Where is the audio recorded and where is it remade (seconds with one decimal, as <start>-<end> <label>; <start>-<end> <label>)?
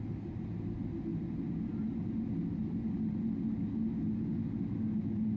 0.0-5.4 recorded